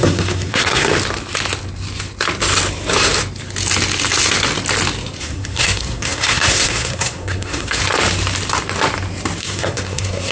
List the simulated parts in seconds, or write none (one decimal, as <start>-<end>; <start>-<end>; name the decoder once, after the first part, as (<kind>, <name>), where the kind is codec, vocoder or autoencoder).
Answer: 0.0-0.9 (codec, SNAC); 5.2-7.8; 9.4-10.3